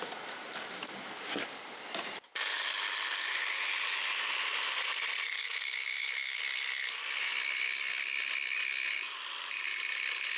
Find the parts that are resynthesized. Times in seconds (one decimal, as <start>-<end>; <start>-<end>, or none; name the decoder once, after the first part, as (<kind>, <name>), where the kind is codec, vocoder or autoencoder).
5.4-6.4 (autoencoder, DAC-VAE)